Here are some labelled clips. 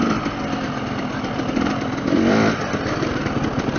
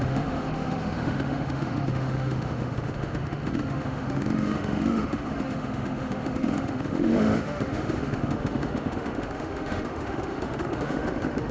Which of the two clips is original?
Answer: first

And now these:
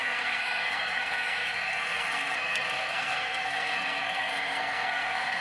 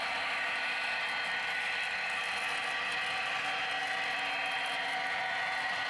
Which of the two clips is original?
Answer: second